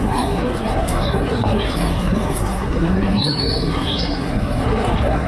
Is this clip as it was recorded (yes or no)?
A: no